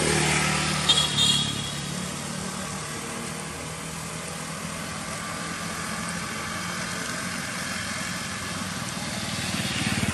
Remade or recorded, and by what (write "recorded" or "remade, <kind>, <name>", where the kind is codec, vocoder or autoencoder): recorded